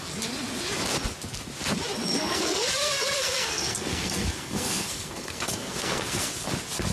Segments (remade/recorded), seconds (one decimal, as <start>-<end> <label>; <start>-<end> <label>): 0.0-2.2 recorded; 2.2-6.3 remade; 6.3-6.9 recorded